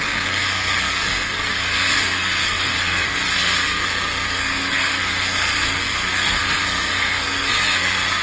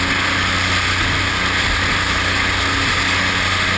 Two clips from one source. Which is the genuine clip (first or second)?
second